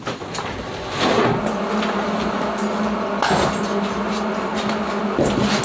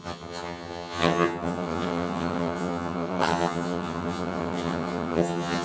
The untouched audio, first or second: first